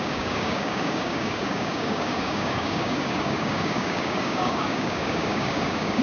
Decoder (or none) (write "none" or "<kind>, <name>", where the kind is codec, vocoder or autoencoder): codec, DAC